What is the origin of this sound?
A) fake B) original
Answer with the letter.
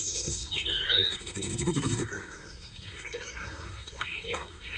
A